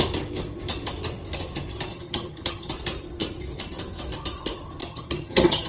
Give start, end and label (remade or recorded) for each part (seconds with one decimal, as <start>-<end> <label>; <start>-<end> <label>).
0.0-1.9 recorded; 1.9-2.7 remade; 2.7-4.8 recorded; 4.8-5.7 remade